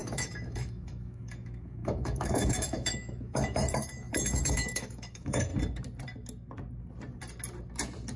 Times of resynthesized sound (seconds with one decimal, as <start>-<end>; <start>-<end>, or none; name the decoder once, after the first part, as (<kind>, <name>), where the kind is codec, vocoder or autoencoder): 0.0-5.5 (autoencoder, DAC-VAE)